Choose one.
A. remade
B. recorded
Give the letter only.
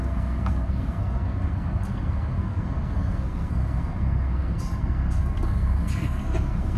A